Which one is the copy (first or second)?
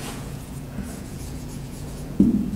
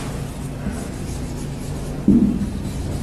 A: first